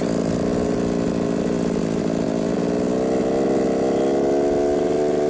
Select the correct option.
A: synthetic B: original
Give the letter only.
B